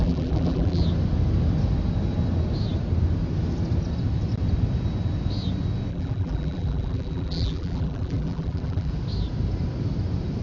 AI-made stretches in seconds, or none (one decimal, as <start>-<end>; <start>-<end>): 0.0-0.8; 5.9-8.9